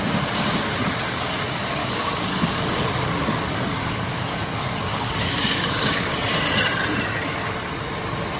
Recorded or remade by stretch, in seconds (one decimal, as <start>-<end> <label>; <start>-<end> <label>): 0.0-1.8 recorded; 1.8-6.1 remade; 6.1-8.4 recorded

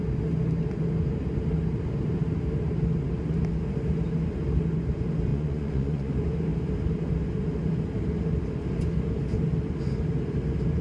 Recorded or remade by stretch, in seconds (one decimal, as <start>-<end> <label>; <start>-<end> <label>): 0.0-5.3 recorded; 5.3-6.1 remade; 6.1-10.8 recorded

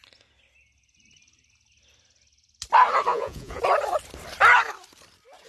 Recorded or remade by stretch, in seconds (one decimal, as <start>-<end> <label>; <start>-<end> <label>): 0.0-3.1 recorded; 3.1-3.6 remade; 3.6-5.5 recorded

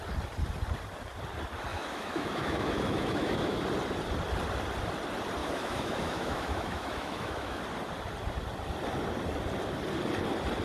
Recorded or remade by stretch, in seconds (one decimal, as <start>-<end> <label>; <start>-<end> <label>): 0.0-1.7 recorded; 1.7-3.6 remade; 3.6-5.4 recorded; 5.4-7.6 remade; 7.6-10.6 recorded

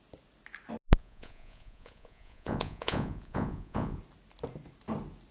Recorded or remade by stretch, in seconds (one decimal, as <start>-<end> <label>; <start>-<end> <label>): 0.0-1.0 recorded; 1.0-4.0 remade; 4.0-5.3 recorded

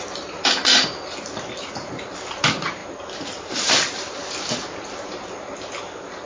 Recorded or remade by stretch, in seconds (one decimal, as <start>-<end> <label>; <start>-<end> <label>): 0.0-6.3 recorded

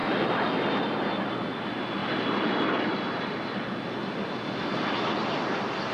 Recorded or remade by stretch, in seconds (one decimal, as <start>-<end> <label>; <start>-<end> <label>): 0.0-5.9 recorded

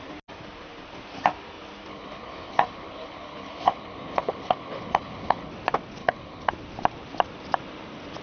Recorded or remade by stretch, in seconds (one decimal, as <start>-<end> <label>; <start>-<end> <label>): 0.0-1.9 recorded; 1.9-5.5 remade; 5.5-6.0 recorded; 6.0-6.5 remade; 6.5-8.2 recorded